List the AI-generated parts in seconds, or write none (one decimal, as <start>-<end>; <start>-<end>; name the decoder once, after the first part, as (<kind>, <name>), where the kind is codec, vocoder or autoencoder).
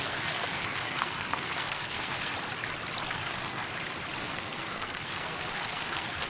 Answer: 0.0-2.3 (codec, SNAC); 3.1-3.6; 4.2-6.3